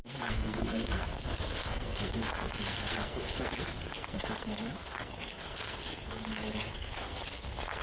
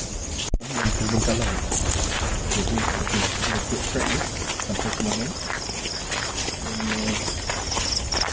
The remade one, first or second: first